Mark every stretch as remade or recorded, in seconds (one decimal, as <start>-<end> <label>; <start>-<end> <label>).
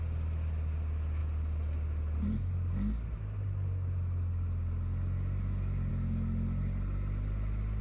0.0-7.8 recorded